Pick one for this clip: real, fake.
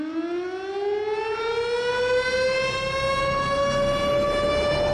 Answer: real